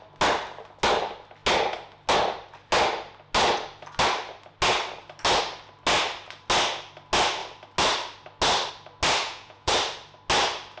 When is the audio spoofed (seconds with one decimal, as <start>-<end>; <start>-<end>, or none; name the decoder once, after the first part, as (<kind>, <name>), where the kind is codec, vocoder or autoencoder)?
9.2-9.7 (vocoder, Vocos)